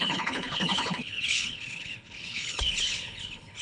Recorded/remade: remade